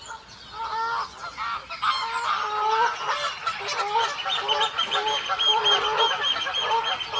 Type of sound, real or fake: real